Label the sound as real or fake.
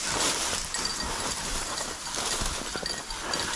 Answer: real